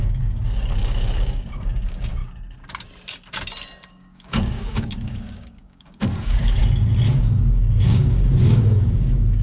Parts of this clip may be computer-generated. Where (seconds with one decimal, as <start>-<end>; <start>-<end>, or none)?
0.0-2.2; 3.9-6.6; 7.1-9.4